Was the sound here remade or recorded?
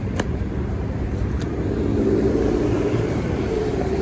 remade